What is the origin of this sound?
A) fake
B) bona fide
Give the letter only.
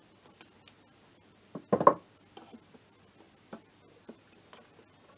B